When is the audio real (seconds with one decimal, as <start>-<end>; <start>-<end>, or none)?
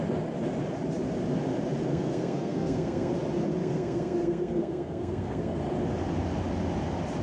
0.0-1.9; 3.1-3.6; 5.6-7.2